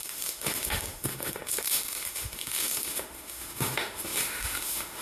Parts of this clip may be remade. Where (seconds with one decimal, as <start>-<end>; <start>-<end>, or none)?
0.0-5.0